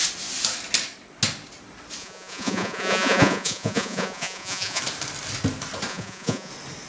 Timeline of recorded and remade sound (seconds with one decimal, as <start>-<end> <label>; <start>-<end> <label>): 0.0-2.0 recorded; 2.0-4.8 remade; 4.8-5.9 recorded; 5.9-6.5 remade; 6.5-6.9 recorded